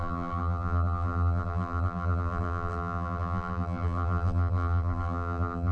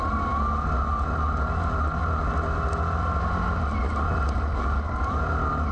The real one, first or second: second